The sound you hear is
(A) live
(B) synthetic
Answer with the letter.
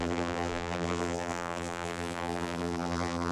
B